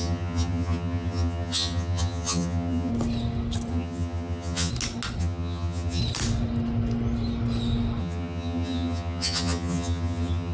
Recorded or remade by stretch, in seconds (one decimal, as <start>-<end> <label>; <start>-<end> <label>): 0.0-2.9 remade; 2.9-3.7 recorded; 3.7-4.7 remade; 4.7-5.2 recorded; 5.2-6.0 remade; 6.0-8.0 recorded; 8.0-10.5 remade